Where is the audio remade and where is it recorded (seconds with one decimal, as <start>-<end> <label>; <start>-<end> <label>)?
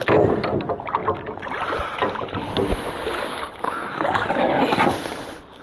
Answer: 0.0-3.3 recorded; 3.3-4.6 remade; 4.6-5.6 recorded